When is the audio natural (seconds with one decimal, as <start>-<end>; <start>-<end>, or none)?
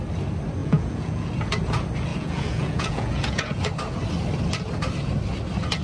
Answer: 0.0-0.6; 1.3-2.1; 3.6-5.8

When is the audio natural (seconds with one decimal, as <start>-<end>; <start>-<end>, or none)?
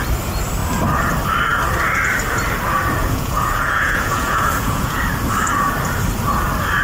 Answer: 0.0-3.0; 5.0-6.8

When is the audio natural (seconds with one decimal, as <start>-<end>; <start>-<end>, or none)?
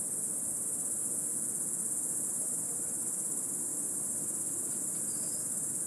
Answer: 0.0-1.0; 2.3-5.9